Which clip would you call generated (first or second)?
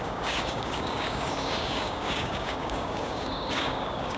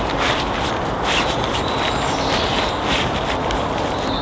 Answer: first